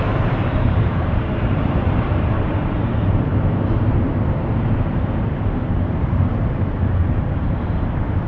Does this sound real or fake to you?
fake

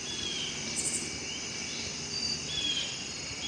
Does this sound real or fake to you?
real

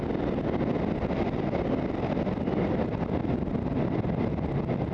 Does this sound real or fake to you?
real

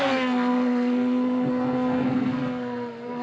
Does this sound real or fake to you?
fake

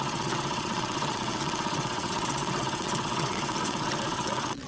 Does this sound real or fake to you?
fake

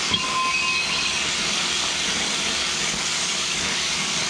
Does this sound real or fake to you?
fake